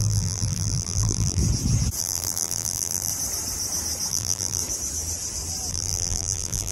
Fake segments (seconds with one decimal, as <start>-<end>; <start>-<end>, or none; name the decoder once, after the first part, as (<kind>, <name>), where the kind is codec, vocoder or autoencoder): 0.0-1.4 (vocoder, BigVGAN v2); 2.0-3.1; 4.1-4.6; 5.7-6.7